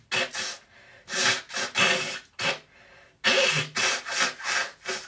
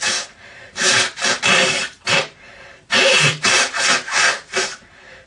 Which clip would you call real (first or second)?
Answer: first